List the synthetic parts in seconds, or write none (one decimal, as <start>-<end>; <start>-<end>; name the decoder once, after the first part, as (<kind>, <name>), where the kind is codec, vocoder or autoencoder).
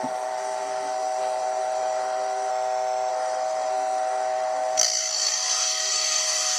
0.0-2.5 (codec, SNAC); 3.1-6.6